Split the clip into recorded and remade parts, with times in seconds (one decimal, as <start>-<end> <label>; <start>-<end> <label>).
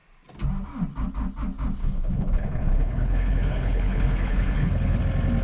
0.0-1.8 recorded; 1.8-5.0 remade; 5.0-5.4 recorded